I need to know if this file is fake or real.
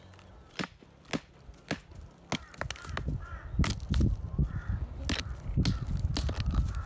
real